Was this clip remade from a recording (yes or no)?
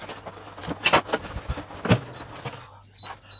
no